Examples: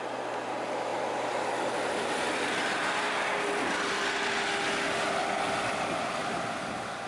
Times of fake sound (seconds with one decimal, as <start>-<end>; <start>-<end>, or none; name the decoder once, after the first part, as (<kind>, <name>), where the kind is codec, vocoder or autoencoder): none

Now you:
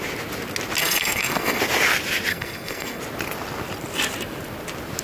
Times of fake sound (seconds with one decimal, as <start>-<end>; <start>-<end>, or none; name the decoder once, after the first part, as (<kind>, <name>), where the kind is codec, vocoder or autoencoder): 0.8-1.6 (codec, SNAC); 2.3-3.0

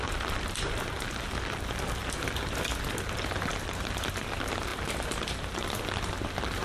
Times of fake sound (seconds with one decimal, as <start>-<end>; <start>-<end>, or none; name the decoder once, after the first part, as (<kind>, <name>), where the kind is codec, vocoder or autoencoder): none

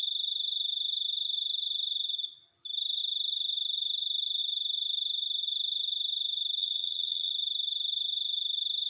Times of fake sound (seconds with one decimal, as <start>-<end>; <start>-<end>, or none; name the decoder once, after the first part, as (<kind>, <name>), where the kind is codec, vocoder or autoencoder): 6.6-7.3 (vocoder, Vocos)